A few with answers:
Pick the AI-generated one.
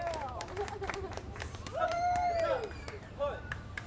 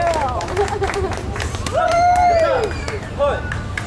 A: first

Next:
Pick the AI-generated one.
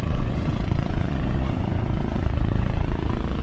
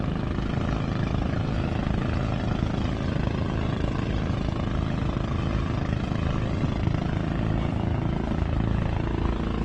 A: first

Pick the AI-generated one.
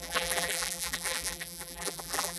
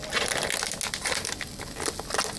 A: first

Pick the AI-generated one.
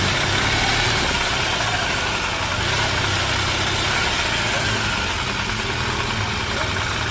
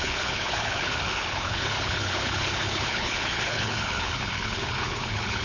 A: second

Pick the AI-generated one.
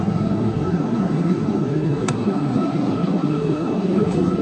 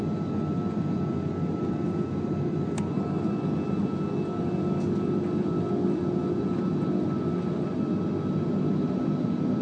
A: first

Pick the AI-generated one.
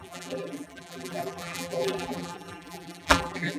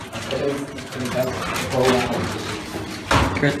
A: first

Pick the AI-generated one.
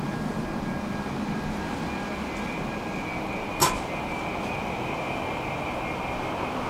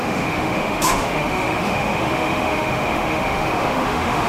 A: second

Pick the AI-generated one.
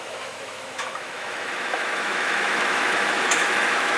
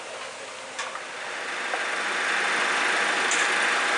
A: first